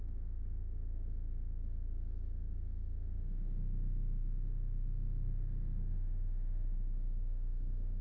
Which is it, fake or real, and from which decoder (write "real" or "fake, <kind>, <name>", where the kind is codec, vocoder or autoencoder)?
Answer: fake, autoencoder, DAC-VAE